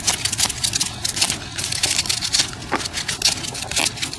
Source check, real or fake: real